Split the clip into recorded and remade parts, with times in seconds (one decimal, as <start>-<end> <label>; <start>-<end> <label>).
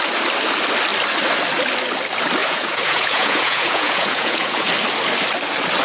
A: 0.0-2.4 recorded; 2.4-4.7 remade; 4.7-5.8 recorded